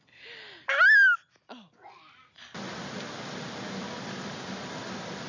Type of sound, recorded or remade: recorded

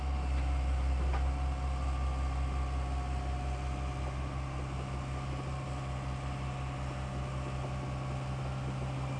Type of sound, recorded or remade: recorded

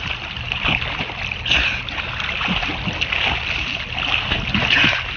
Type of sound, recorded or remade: recorded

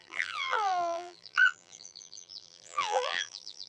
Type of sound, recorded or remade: remade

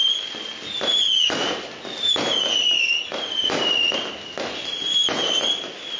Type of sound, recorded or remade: recorded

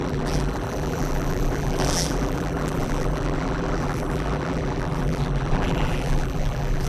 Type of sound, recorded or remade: remade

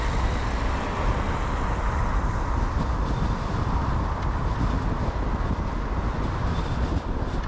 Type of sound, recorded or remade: recorded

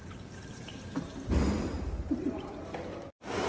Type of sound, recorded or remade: remade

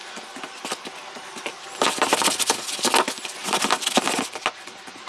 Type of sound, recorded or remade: recorded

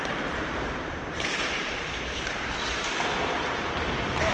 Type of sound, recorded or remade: remade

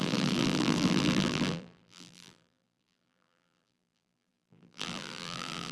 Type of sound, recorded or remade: remade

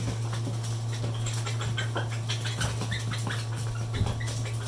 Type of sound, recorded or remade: recorded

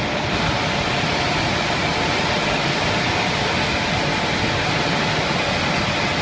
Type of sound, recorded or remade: recorded